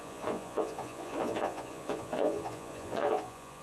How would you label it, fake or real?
fake